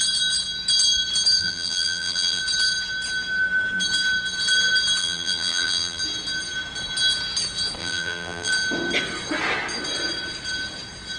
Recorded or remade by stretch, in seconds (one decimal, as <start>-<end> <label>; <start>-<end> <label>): 0.0-1.4 recorded; 1.4-2.4 remade; 2.4-5.0 recorded; 5.0-6.0 remade; 6.0-7.8 recorded; 7.8-8.5 remade; 8.5-11.2 recorded